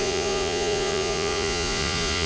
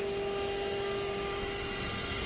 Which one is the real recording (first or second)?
second